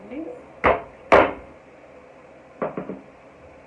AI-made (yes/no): no